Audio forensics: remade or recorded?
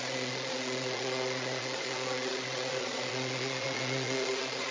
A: remade